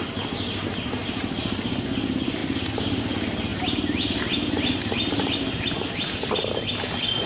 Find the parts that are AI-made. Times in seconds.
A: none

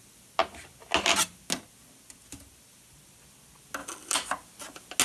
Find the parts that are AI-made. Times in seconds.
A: none